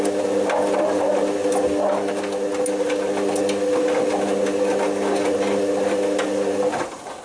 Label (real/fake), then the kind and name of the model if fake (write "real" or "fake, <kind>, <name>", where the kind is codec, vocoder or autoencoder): real